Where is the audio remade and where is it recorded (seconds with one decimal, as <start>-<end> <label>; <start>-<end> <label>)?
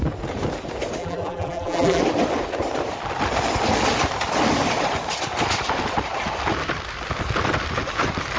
0.0-1.0 recorded; 1.0-2.0 remade; 2.0-8.4 recorded